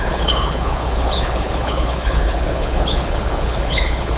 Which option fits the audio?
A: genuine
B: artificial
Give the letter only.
B